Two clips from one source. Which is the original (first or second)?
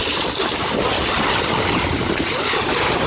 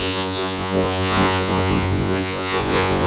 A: first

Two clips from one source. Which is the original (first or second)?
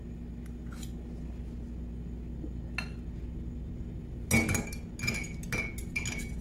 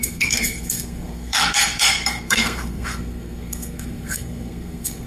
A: first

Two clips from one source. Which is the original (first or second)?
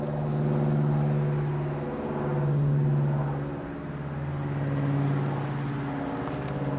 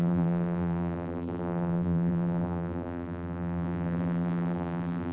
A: first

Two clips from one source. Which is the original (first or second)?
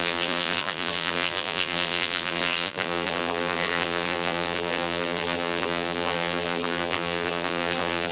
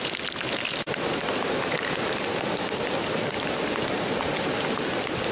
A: second